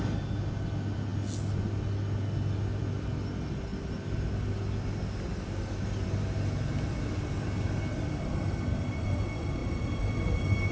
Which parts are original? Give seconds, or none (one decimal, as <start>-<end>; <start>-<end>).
0.0-10.7